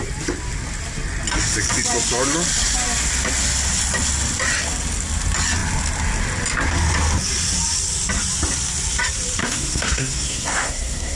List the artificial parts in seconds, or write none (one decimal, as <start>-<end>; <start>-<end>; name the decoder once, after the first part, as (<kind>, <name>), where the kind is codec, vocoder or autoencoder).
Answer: 9.4-11.2 (codec, SNAC)